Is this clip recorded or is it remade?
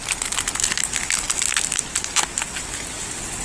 recorded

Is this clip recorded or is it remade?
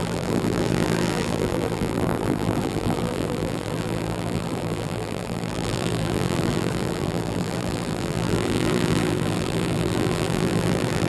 remade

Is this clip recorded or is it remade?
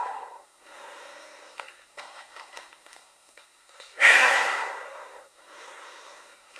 remade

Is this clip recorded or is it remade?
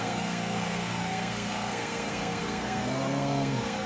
remade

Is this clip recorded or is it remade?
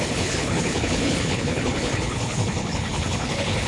remade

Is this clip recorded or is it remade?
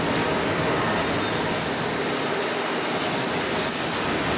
recorded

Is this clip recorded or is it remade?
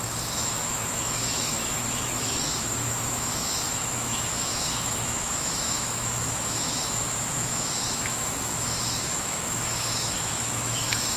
remade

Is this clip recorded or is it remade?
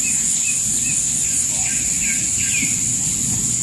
recorded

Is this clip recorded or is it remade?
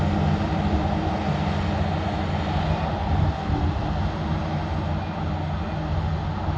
recorded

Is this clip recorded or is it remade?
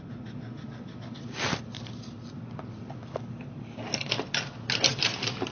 recorded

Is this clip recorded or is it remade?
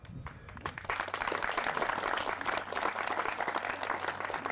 recorded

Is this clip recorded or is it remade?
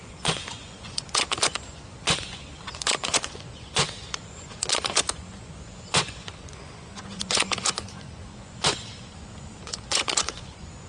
remade